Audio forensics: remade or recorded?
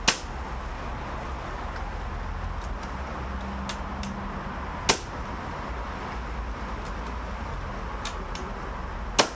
recorded